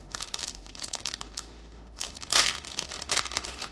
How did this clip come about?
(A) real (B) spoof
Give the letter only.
B